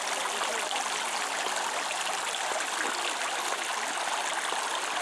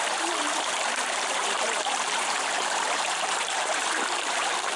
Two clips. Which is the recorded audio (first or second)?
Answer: first